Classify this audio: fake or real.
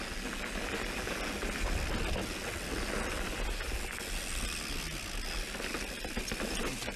real